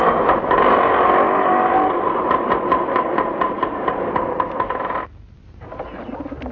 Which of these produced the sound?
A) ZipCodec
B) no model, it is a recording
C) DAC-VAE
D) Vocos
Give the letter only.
B